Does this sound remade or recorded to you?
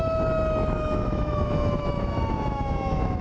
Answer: remade